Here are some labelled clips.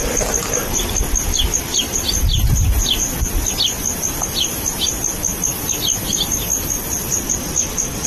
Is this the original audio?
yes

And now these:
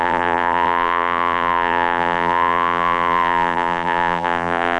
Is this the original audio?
no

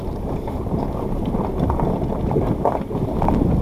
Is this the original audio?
yes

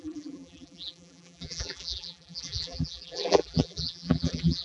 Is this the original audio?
no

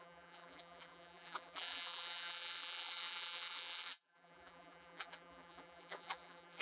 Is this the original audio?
no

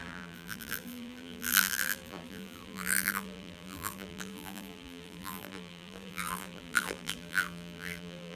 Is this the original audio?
no